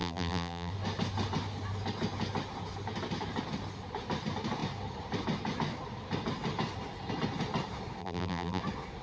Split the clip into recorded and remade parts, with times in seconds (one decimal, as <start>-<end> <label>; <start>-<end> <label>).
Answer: 0.0-0.7 remade; 0.7-8.0 recorded; 8.0-8.6 remade; 8.6-9.0 recorded